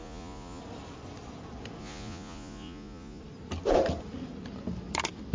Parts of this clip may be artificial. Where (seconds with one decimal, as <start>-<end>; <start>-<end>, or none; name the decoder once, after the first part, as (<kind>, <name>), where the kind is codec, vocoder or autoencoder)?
0.0-0.6 (vocoder, Vocos); 1.8-3.2